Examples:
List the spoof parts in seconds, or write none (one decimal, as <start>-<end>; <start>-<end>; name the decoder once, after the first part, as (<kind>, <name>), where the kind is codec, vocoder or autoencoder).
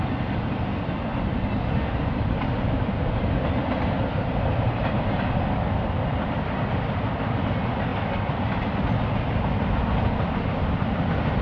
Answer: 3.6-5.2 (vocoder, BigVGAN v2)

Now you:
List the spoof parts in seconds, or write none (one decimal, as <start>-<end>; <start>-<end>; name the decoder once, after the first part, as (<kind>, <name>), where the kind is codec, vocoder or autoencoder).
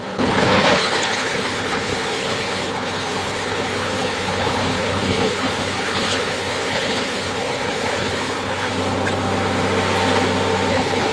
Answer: 0.0-8.7 (codec, HILCodec); 10.7-11.1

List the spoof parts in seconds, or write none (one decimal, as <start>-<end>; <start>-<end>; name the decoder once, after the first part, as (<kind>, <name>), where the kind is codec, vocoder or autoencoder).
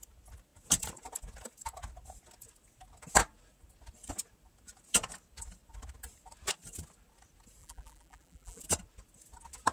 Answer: 7.6-8.6 (vocoder, BigVGAN v2)